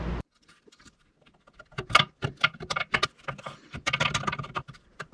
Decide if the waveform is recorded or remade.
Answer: recorded